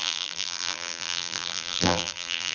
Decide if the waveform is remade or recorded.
remade